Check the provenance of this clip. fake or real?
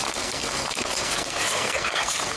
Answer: fake